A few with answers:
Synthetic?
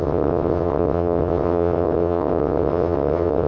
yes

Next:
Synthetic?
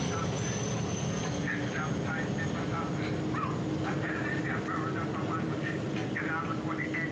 no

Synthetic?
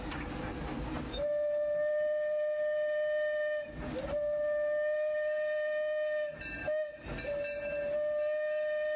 no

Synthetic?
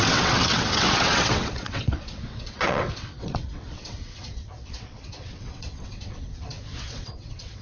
yes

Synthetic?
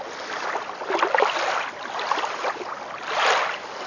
no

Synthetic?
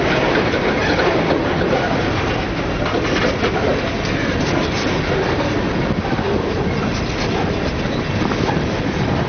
no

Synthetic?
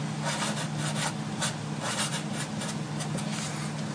no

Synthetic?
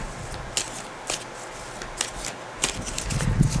no